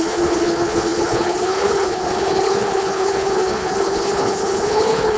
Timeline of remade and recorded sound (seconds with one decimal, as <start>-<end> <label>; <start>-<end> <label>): 0.0-5.2 remade